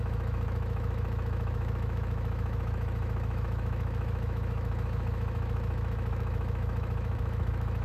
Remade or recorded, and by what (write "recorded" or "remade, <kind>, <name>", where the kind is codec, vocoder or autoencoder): remade, autoencoder, DAC-VAE